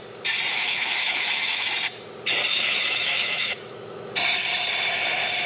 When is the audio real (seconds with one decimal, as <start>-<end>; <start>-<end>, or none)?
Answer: 0.0-0.5; 1.7-2.5; 4.1-5.5